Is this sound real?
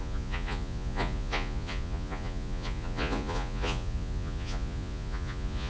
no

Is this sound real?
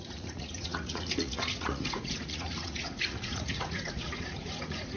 no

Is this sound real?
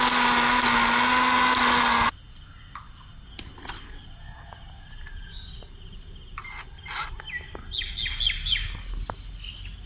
yes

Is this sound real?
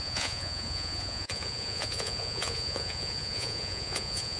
no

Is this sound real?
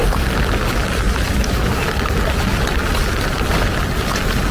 yes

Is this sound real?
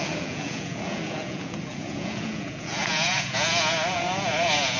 no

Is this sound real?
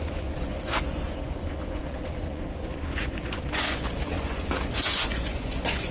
no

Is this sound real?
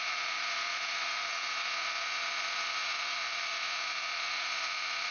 no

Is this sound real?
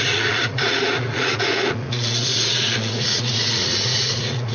no